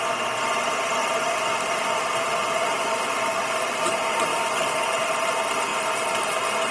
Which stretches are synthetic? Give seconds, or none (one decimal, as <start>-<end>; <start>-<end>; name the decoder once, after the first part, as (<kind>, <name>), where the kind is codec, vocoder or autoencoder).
1.0-3.0 (vocoder, BigVGAN v2); 4.3-5.0